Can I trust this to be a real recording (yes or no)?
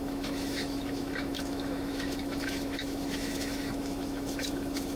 no